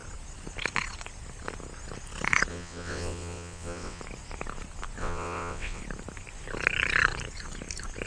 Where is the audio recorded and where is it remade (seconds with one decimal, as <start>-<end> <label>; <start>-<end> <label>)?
0.0-2.5 recorded; 2.5-4.0 remade; 4.0-5.0 recorded; 5.0-5.8 remade; 5.8-8.1 recorded